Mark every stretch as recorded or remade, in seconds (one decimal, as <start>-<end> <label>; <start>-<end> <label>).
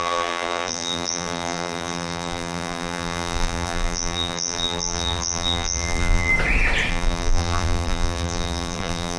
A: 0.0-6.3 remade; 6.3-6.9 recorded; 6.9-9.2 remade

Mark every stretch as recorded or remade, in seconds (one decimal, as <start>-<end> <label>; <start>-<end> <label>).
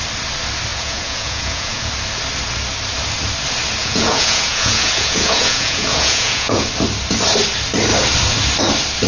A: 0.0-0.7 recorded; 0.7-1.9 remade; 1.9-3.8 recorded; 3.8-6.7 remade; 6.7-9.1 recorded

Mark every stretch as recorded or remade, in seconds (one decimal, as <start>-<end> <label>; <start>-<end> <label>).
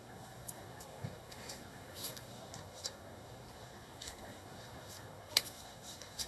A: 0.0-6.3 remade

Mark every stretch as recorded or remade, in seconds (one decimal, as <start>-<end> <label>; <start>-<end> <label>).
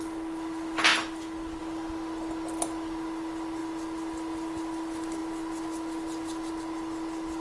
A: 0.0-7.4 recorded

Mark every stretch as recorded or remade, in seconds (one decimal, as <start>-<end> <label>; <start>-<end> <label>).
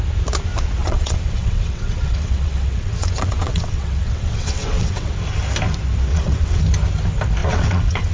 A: 0.0-0.8 recorded; 0.8-5.1 remade; 5.1-6.1 recorded; 6.1-6.6 remade; 6.6-7.4 recorded; 7.4-8.1 remade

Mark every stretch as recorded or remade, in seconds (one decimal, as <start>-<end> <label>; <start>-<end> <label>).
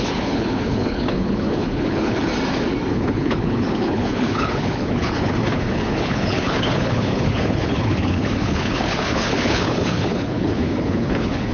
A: 0.0-2.3 remade; 2.3-2.9 recorded; 2.9-11.5 remade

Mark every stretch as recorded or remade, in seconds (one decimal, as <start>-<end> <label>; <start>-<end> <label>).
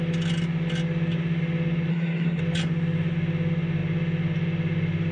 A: 0.0-1.9 recorded; 1.9-2.4 remade; 2.4-5.1 recorded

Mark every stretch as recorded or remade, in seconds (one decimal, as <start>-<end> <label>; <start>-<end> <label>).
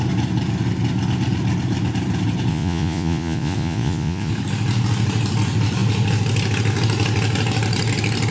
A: 0.0-2.5 recorded; 2.5-4.3 remade; 4.3-8.3 recorded